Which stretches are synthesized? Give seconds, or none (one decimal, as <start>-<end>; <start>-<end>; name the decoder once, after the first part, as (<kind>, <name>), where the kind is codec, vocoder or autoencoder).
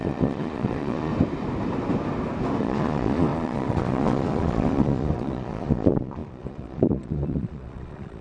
0.0-1.1 (vocoder, Vocos); 2.6-8.2